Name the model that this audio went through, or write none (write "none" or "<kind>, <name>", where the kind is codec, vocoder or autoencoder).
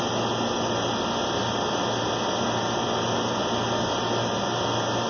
none